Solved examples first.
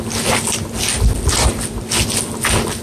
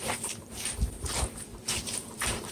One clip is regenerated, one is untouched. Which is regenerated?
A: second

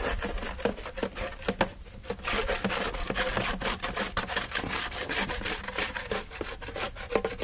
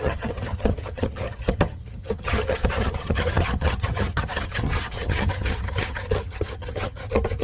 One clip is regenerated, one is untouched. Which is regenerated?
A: second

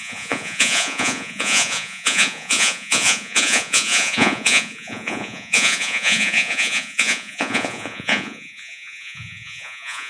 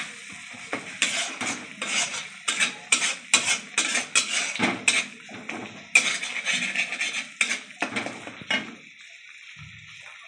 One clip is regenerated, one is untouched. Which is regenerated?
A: first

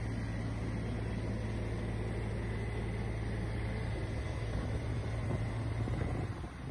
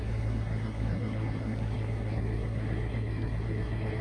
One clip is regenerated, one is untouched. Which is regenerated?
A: second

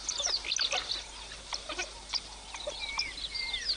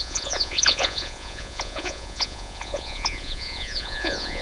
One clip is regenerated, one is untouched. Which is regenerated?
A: second